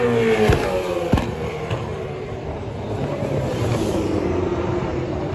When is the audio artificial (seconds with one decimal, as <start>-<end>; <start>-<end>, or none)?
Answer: 1.9-5.3